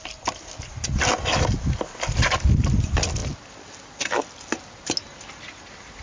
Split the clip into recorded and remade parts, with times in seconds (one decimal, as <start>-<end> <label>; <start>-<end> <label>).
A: 0.0-6.0 recorded